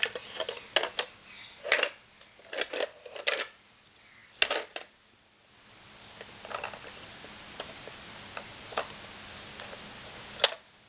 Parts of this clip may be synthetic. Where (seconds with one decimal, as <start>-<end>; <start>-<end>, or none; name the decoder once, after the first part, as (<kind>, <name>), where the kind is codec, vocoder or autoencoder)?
none

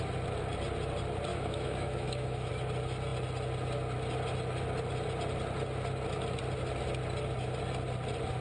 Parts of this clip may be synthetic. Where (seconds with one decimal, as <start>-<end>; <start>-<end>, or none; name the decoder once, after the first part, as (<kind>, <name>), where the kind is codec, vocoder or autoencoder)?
1.3-2.5 (autoencoder, DAC-VAE)

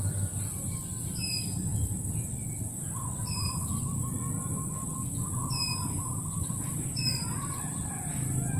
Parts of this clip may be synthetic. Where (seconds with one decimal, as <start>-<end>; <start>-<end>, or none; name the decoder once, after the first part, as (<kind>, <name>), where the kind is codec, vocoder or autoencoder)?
0.0-4.2 (vocoder, BigVGAN v2); 5.5-8.6